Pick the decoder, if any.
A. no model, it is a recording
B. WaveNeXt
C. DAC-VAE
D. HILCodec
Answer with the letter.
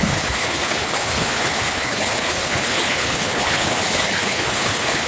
D